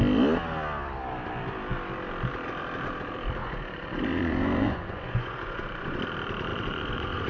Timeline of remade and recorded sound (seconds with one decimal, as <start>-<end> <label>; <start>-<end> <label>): 0.0-3.4 recorded; 3.4-6.0 remade; 6.0-6.5 recorded; 6.5-7.3 remade